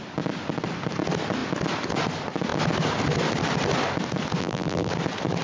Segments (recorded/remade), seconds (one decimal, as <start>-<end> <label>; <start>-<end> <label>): 0.0-4.4 recorded; 4.4-4.9 remade; 4.9-5.4 recorded